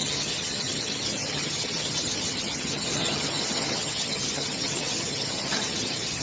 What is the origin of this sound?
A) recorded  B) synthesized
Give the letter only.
B